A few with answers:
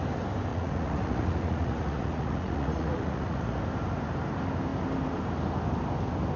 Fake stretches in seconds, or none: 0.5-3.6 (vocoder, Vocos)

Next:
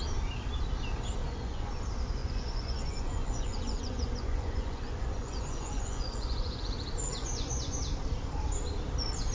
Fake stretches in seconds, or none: 1.2-1.7 (vocoder, Vocos); 2.2-6.6; 7.1-7.8

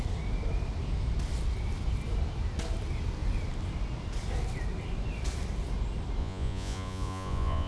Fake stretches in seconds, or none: 6.2-7.7 (vocoder, Vocos)

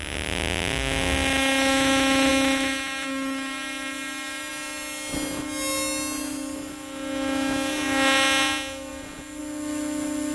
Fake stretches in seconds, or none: none